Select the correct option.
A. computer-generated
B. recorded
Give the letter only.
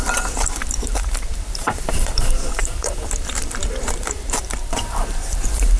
A